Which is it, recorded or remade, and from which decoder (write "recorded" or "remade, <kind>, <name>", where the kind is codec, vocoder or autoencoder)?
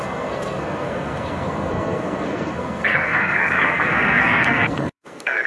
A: remade, codec, SNAC